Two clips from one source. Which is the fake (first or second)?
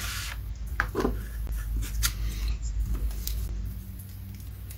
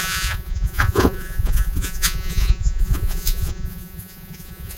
second